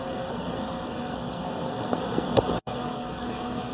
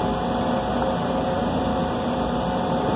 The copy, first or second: first